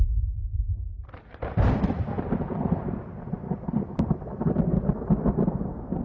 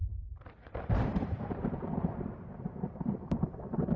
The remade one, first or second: second